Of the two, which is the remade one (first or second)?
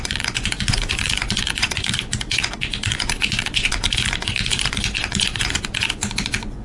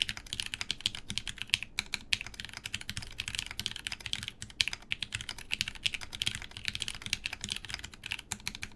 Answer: first